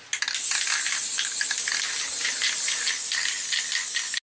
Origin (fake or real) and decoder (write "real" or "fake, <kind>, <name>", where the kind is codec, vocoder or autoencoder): real